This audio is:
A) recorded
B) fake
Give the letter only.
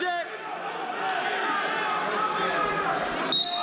A